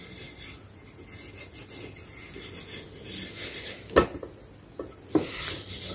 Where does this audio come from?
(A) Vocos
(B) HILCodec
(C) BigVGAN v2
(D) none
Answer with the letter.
D